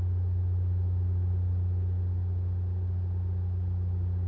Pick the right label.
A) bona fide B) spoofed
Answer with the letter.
A